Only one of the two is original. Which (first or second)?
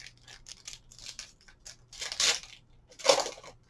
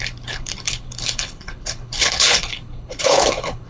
first